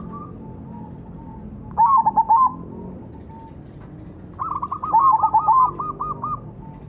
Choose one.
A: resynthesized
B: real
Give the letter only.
B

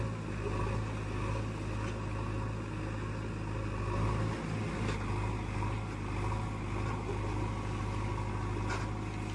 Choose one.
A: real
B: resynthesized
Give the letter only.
A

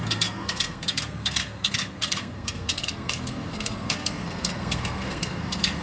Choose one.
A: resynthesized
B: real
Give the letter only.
A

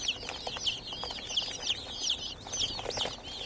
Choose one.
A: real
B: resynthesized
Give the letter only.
A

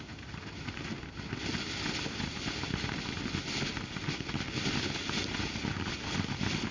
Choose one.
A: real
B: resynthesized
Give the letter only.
A